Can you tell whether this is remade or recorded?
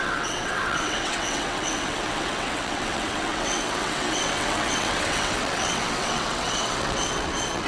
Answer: remade